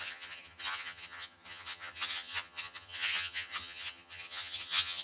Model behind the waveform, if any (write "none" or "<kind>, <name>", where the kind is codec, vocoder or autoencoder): vocoder, HiFi-GAN